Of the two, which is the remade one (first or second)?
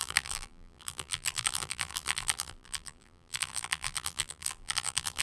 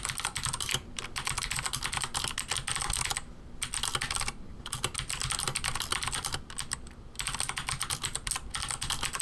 first